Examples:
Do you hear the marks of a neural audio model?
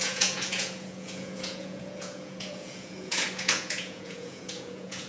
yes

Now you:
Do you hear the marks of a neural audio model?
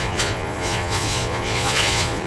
yes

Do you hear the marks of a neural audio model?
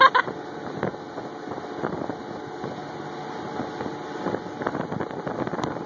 no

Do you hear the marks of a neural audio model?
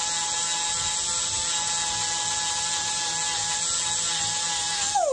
no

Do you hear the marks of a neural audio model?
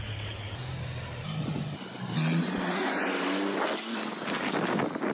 no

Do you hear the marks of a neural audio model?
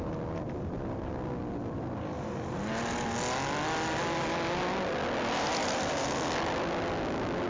no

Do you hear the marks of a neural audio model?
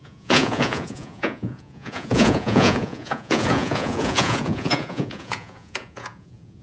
yes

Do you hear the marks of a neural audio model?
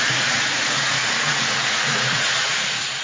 yes